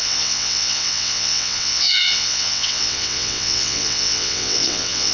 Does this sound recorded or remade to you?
remade